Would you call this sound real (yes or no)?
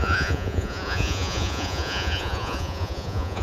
no